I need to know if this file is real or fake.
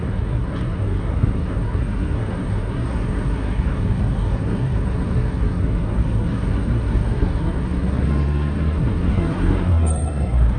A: fake